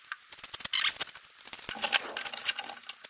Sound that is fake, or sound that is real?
real